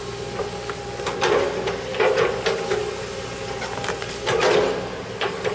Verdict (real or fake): real